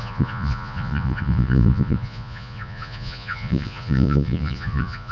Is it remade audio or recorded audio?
remade